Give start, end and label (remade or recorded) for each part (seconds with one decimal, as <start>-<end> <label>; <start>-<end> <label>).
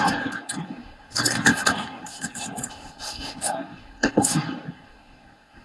0.0-5.6 remade